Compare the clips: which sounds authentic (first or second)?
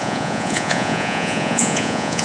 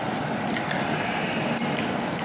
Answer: second